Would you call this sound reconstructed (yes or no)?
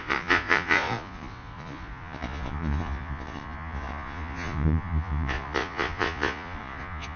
yes